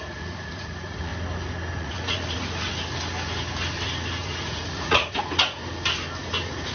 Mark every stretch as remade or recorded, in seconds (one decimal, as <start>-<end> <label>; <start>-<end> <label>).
0.0-1.1 remade; 1.1-1.8 recorded; 1.8-2.7 remade; 2.7-4.1 recorded; 4.1-5.6 remade; 5.6-6.2 recorded; 6.2-6.7 remade